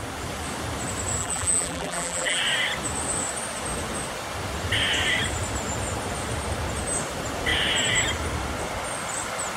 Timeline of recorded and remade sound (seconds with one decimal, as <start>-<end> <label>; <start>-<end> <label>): 0.0-1.2 recorded; 1.2-2.4 remade; 2.4-9.6 recorded